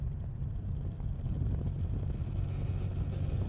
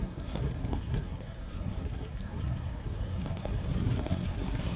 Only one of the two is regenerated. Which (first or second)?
second